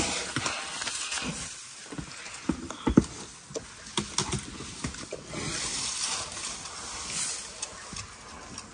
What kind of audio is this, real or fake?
real